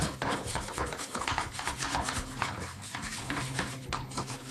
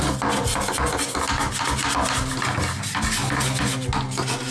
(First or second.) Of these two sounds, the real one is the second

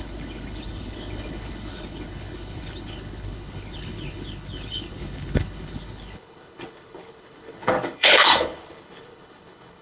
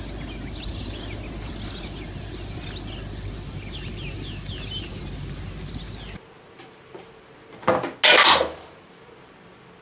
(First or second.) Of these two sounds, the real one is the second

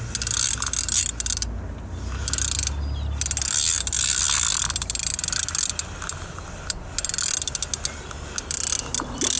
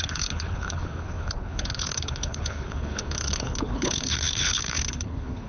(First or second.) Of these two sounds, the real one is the first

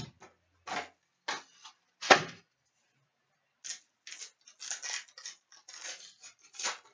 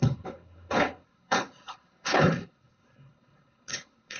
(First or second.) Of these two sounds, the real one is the first